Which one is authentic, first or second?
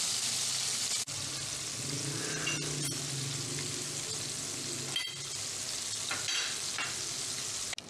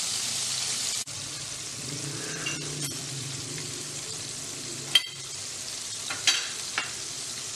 first